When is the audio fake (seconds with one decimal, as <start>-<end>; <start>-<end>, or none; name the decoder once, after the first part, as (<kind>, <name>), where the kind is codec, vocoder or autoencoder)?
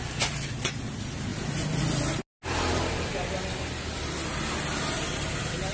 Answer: none